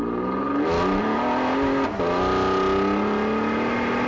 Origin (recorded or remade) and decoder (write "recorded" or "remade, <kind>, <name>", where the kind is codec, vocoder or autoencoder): recorded